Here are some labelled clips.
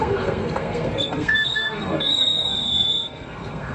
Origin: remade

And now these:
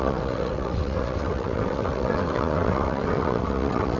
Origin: remade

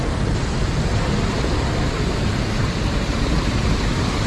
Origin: recorded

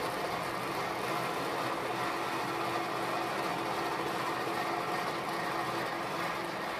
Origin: recorded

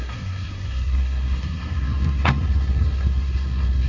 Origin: remade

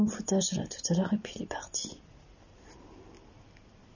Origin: recorded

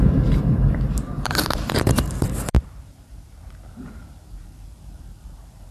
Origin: remade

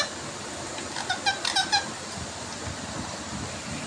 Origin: recorded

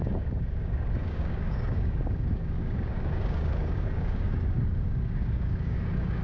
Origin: remade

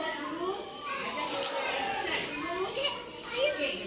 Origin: recorded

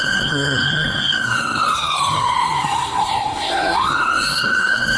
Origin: remade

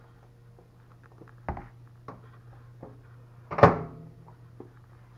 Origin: recorded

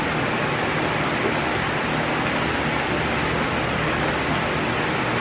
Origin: recorded